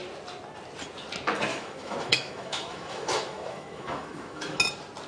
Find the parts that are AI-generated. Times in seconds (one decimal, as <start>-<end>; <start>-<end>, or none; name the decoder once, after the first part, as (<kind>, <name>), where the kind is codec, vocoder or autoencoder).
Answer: 1.5-4.6 (autoencoder, DAC-VAE)

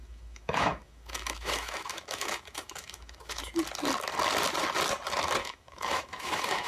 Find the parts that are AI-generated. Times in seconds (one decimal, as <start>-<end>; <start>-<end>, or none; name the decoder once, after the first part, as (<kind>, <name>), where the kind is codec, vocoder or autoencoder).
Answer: 0.0-3.4 (autoencoder, DAC-VAE); 5.4-6.7

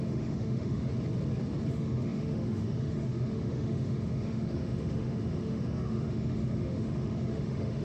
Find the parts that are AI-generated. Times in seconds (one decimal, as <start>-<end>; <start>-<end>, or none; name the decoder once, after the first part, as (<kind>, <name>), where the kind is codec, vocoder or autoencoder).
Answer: 0.0-0.9 (autoencoder, DAC-VAE); 1.7-7.8

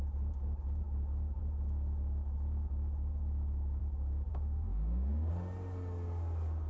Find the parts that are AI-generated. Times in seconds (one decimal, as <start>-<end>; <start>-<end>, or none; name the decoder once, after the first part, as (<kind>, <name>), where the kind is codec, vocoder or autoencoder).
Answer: 4.3-5.3 (autoencoder, DAC-VAE)

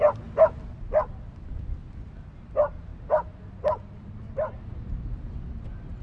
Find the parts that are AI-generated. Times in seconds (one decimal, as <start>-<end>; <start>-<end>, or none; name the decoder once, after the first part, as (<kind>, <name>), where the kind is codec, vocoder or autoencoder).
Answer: none

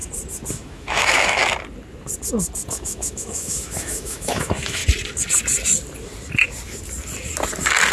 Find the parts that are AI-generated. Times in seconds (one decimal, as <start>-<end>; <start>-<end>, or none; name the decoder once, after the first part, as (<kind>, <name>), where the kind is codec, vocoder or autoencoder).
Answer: 0.5-1.4 (autoencoder, DAC-VAE); 2.7-4.8

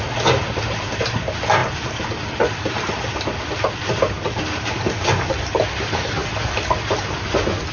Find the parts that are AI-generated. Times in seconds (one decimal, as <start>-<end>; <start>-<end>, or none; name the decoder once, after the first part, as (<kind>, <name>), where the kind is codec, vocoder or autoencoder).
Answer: none

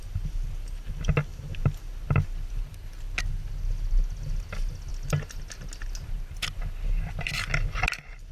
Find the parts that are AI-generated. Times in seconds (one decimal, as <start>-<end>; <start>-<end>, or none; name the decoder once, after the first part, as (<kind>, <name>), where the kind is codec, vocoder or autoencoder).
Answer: none